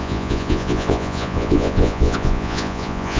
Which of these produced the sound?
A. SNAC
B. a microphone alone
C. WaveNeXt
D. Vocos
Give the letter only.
D